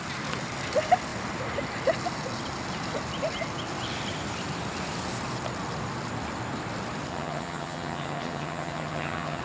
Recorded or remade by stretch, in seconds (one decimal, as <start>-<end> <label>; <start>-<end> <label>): 0.0-7.1 recorded; 7.1-9.4 remade